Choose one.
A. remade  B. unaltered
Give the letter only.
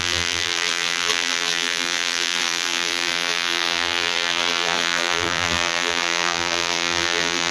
A